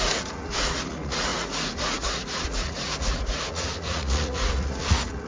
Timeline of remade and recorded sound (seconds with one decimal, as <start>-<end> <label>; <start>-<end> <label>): 0.0-5.3 remade